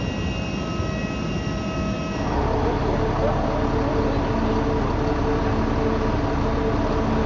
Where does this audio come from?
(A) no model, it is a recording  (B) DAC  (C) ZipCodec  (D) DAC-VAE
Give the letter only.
A